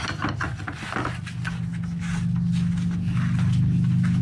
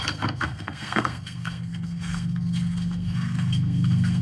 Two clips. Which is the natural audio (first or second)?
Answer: first